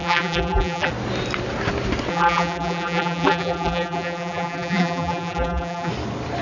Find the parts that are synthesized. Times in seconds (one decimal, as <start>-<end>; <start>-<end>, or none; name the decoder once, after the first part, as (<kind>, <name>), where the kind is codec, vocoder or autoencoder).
0.0-0.9 (vocoder, BigVGAN v2); 2.1-5.9